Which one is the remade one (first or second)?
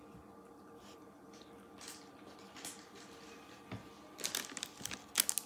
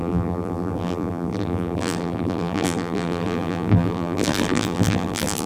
second